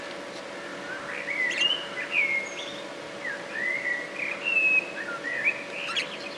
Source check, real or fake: real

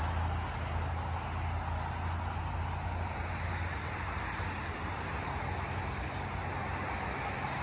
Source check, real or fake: real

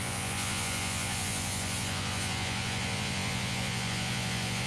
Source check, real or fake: fake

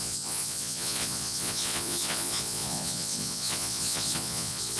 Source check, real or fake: fake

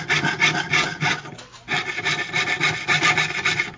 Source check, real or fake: real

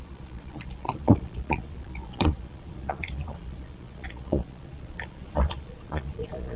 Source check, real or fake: fake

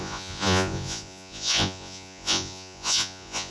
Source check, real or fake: fake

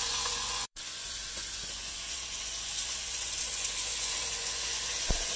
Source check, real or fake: fake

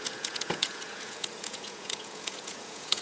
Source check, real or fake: fake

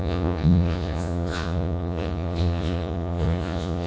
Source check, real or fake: fake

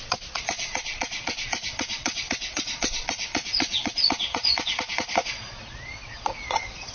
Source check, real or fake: fake